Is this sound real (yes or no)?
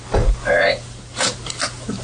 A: yes